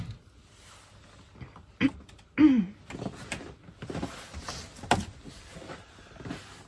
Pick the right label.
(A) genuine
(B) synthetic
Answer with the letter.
A